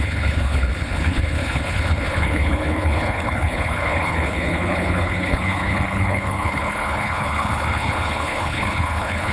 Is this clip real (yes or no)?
no